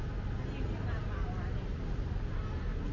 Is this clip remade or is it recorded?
recorded